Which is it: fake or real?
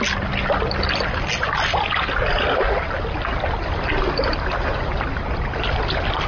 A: real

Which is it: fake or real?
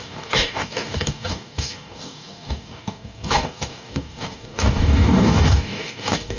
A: fake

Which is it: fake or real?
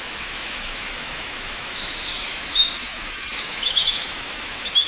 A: fake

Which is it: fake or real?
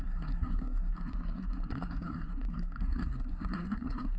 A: fake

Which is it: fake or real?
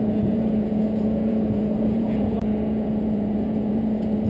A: fake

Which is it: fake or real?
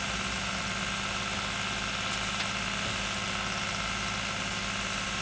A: real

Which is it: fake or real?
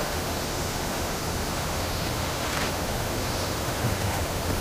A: fake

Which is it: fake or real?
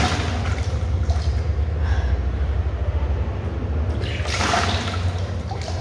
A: real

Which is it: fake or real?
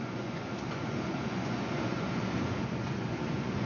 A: fake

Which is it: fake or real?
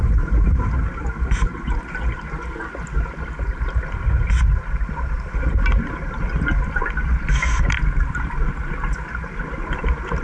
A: real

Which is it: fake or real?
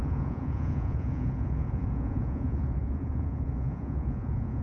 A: fake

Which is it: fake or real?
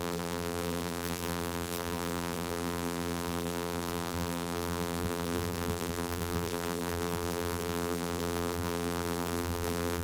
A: fake